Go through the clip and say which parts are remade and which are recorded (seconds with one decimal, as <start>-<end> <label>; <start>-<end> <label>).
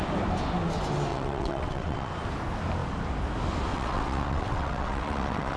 0.0-1.1 recorded; 1.1-2.1 remade; 2.1-3.7 recorded; 3.7-5.6 remade